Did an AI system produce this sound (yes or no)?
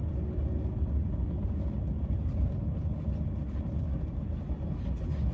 no